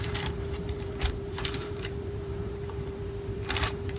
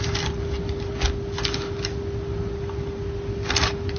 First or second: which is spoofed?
first